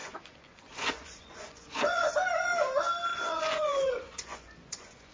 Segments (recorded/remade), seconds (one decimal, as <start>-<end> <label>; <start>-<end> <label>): 0.0-2.1 remade; 2.1-3.1 recorded; 3.1-5.1 remade